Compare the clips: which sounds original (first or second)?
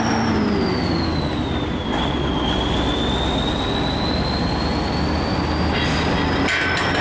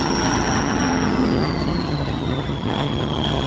first